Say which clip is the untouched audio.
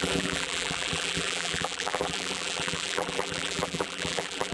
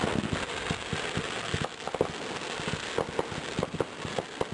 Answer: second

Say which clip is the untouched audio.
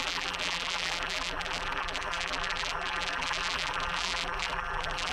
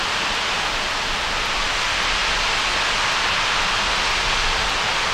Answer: second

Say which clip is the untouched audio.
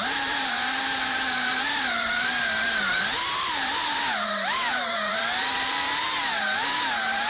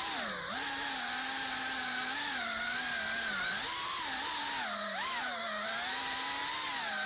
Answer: second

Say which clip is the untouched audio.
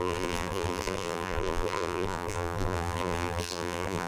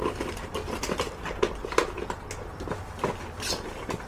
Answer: second